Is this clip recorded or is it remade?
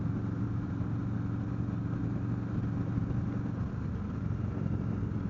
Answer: recorded